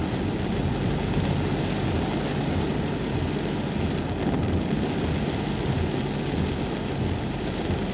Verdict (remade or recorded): recorded